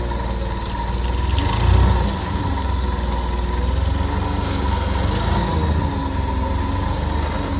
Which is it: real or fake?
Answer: real